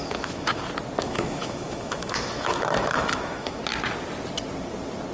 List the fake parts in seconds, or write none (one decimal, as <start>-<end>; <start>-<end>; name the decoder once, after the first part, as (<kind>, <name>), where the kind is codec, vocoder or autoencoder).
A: 0.0-0.6 (autoencoder, DAC-VAE); 1.0-3.6